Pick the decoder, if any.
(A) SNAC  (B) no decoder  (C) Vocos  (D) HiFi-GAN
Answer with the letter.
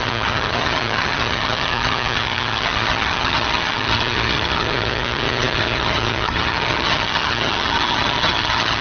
D